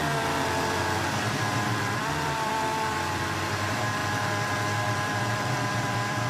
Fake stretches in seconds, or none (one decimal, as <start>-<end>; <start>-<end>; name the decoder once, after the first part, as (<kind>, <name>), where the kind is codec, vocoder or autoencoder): 0.0-4.0 (vocoder, BigVGAN v2); 4.9-6.3